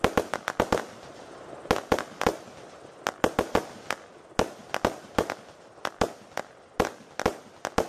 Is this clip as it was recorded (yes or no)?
yes